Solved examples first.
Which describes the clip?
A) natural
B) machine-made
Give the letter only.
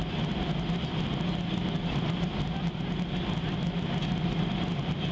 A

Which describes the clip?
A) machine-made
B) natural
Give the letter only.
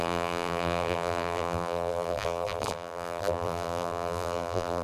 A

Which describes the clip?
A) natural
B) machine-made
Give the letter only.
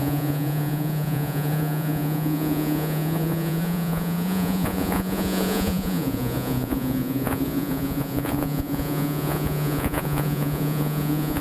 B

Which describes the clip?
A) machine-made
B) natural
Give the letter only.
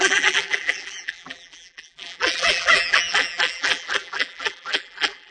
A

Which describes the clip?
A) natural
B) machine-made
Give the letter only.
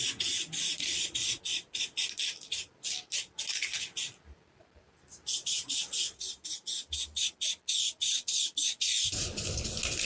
A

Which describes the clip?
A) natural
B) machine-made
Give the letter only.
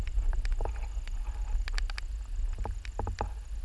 A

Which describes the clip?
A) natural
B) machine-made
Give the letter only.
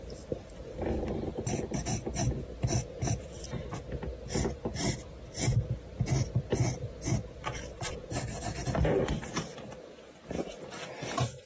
A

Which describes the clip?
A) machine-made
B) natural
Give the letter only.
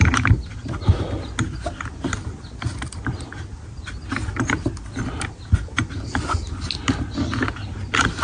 B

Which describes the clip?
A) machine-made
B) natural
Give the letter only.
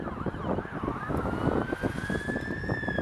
B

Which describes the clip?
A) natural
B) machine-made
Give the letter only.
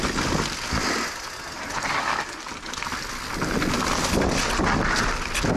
A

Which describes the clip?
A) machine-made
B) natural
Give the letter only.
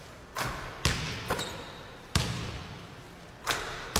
B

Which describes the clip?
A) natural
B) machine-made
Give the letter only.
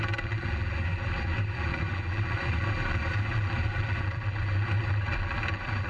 B